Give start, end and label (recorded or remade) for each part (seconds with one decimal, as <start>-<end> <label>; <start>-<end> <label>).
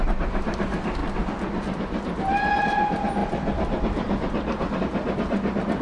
0.0-5.8 recorded